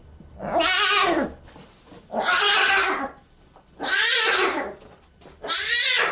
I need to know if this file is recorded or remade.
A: recorded